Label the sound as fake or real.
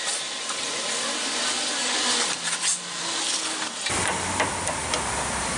real